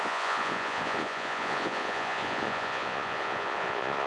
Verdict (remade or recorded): remade